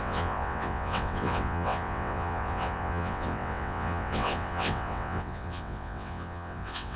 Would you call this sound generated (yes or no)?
yes